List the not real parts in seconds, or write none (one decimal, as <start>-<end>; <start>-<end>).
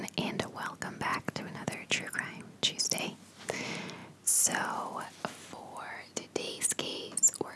1.1-2.2